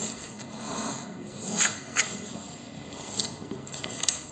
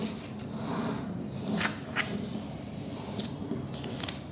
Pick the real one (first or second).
second